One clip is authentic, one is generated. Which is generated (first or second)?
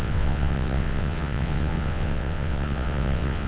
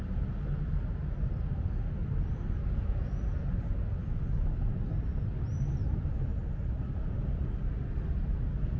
first